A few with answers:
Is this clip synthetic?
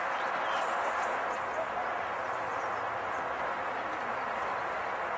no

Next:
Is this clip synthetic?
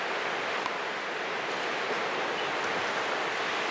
no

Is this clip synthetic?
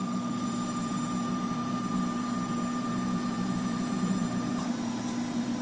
yes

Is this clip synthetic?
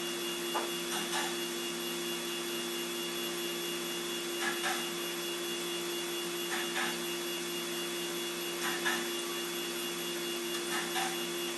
no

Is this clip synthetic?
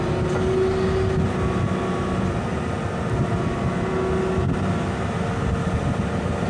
no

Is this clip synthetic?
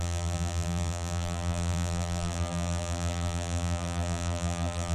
yes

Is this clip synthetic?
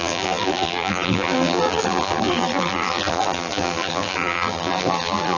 yes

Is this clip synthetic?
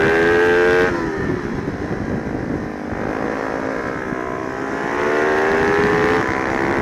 no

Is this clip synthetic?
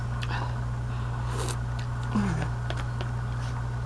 no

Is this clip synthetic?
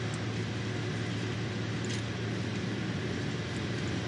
no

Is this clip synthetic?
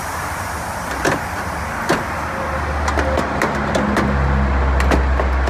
no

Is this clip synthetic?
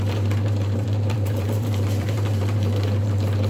yes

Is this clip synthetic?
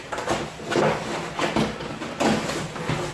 no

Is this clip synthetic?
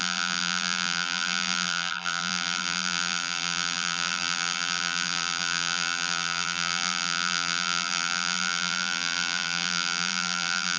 yes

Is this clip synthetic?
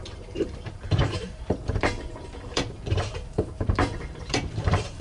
yes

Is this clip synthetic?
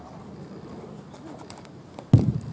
no